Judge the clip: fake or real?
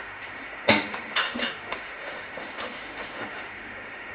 fake